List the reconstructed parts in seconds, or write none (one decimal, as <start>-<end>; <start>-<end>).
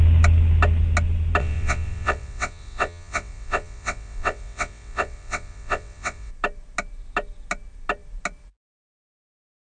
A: 1.4-6.3